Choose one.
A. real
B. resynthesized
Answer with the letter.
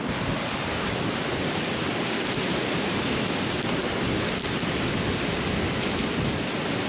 A